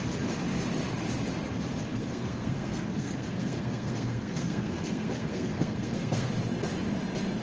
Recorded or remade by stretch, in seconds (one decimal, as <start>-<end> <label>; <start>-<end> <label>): 0.0-1.9 recorded; 1.9-6.3 remade; 6.3-7.4 recorded